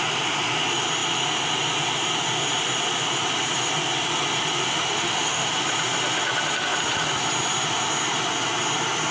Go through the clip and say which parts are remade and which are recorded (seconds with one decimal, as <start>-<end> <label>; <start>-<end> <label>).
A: 0.0-4.7 recorded; 4.7-5.5 remade; 5.5-9.1 recorded

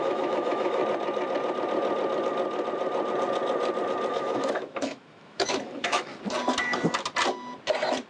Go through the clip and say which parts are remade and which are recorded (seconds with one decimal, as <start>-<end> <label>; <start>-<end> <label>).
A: 0.0-0.8 remade; 0.8-4.1 recorded; 4.1-6.1 remade; 6.1-8.1 recorded

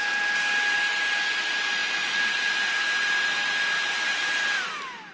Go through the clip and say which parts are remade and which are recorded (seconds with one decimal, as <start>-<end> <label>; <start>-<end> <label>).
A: 0.0-5.1 recorded

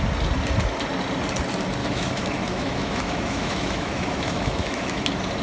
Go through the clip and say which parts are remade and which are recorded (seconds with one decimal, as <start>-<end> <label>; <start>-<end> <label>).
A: 0.0-1.8 recorded; 1.8-5.0 remade; 5.0-5.4 recorded

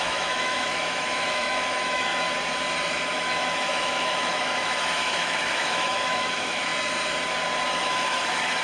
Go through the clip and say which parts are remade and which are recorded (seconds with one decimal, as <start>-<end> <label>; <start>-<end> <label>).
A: 0.0-2.1 remade; 2.1-2.9 recorded; 2.9-6.7 remade; 6.7-7.8 recorded; 7.8-8.6 remade

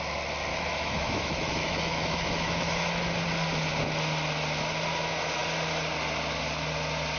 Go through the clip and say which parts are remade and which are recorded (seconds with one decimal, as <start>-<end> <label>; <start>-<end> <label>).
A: 0.0-0.5 recorded; 0.5-3.1 remade; 3.1-7.2 recorded